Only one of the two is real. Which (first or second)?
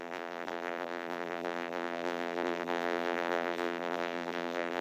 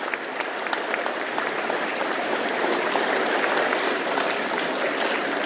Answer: second